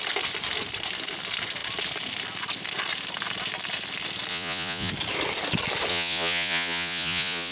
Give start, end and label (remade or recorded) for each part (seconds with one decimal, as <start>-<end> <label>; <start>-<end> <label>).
0.0-4.3 recorded; 4.3-4.9 remade; 4.9-5.9 recorded; 5.9-7.5 remade

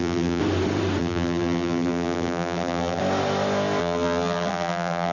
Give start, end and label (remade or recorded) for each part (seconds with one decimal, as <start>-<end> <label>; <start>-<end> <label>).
0.0-0.4 remade; 0.4-1.0 recorded; 1.0-3.0 remade; 3.0-3.8 recorded; 3.8-5.1 remade

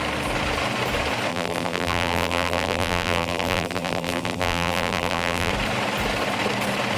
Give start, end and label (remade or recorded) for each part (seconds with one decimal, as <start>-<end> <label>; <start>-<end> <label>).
0.0-1.3 recorded; 1.3-5.5 remade; 5.5-7.0 recorded

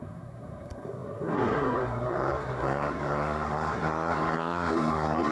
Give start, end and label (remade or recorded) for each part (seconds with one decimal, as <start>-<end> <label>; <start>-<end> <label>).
0.0-5.3 remade

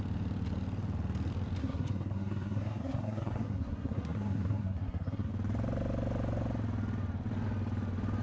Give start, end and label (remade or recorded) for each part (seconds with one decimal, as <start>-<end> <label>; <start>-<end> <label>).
0.0-1.6 recorded; 1.6-5.3 remade; 5.3-8.2 recorded

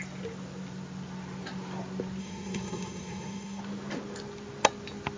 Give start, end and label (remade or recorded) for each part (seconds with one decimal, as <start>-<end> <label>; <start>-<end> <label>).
0.0-2.2 recorded; 2.2-3.6 remade; 3.6-5.2 recorded

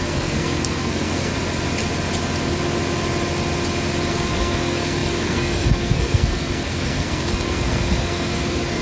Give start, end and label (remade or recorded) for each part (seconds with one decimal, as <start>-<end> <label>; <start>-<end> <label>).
0.0-1.3 remade; 1.3-4.1 recorded; 4.1-8.8 remade